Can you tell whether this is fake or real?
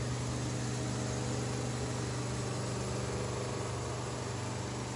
real